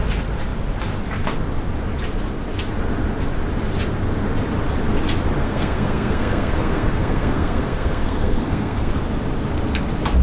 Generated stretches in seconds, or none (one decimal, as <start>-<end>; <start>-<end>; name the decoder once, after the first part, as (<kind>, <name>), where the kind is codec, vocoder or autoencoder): 5.4-9.0 (codec, SNAC)